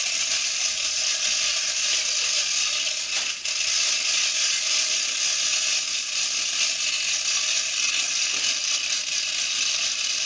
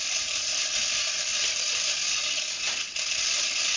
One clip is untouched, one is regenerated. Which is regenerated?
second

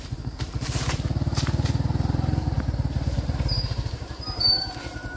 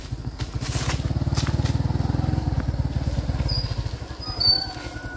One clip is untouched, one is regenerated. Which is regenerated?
first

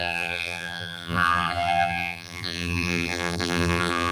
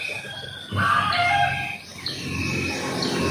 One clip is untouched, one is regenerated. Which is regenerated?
first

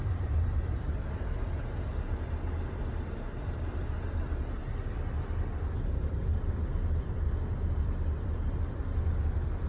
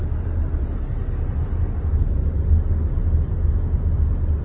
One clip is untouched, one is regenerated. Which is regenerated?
first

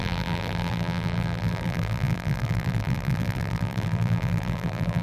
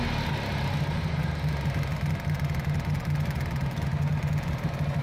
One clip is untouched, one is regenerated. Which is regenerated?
first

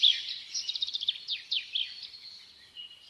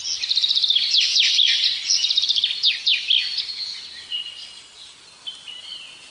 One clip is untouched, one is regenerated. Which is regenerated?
first